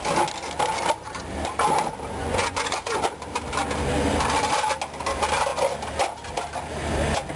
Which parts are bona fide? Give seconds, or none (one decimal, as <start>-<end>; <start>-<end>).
0.0-2.2; 3.0-7.4